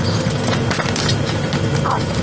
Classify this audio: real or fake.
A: real